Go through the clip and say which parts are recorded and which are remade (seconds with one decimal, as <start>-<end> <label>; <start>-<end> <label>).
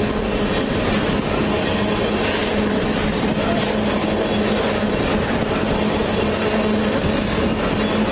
0.0-8.1 recorded